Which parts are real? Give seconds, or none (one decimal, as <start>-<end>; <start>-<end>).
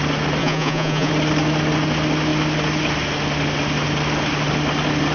0.0-0.4; 1.1-5.1